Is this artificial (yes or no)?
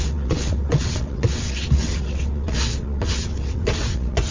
yes